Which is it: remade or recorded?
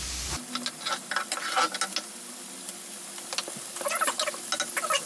recorded